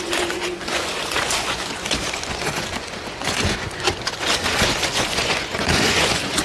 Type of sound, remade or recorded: remade